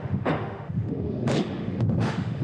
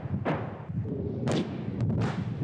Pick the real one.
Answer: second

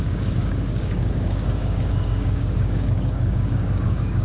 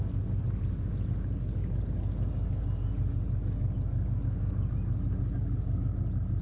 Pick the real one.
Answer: second